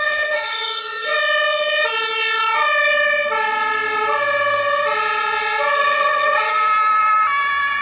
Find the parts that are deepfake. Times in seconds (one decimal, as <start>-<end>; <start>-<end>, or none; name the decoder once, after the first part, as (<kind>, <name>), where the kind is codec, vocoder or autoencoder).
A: 0.0-1.1 (vocoder, HiFi-GAN); 5.8-6.4